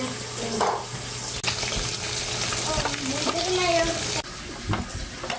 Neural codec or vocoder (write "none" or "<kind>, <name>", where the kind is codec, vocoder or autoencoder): none